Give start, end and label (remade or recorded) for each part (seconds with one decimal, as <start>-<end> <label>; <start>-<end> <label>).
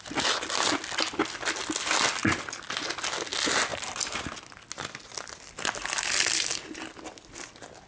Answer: 0.0-7.9 recorded